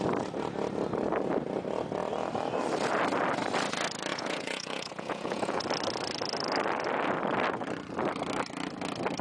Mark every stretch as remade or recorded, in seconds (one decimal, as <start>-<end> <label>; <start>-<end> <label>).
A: 0.0-4.1 recorded; 4.1-5.6 remade; 5.6-9.2 recorded